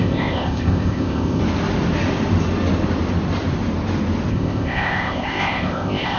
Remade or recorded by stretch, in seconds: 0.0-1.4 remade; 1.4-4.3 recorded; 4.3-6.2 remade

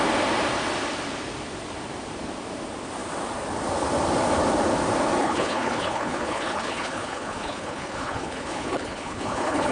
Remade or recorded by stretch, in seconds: 0.0-5.2 recorded; 5.2-9.7 remade